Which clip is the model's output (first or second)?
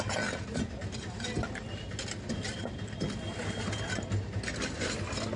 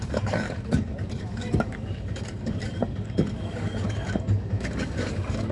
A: second